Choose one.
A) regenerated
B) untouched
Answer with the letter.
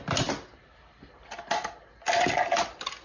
B